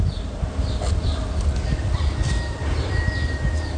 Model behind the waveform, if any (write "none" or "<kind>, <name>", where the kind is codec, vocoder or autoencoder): none